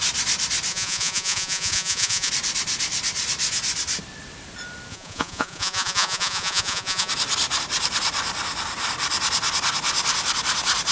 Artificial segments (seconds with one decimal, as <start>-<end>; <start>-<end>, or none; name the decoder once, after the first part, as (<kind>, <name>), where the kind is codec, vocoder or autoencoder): 0.7-2.3 (vocoder, Vocos); 4.9-7.1